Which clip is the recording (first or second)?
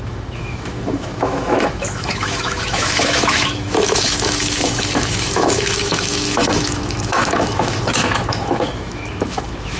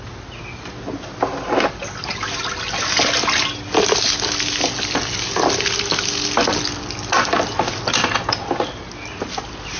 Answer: second